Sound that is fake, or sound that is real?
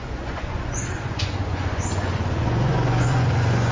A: fake